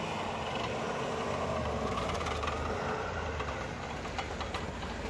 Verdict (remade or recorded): recorded